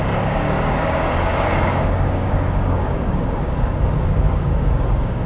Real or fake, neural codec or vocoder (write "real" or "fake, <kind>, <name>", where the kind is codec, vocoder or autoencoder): fake, codec, DAC